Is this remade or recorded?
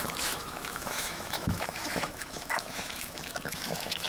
remade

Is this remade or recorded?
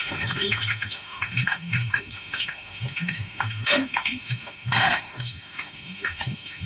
remade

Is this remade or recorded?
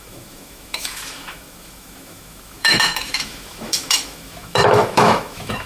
remade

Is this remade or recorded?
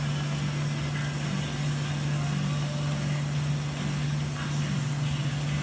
recorded